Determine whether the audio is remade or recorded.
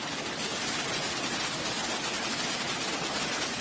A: recorded